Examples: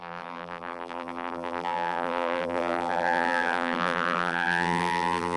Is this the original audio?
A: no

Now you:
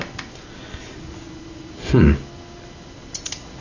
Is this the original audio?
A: yes